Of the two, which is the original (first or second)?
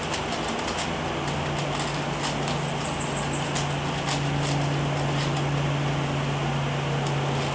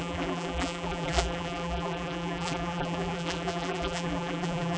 first